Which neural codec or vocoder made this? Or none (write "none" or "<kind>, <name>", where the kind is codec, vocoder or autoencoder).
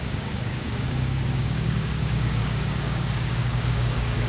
codec, DAC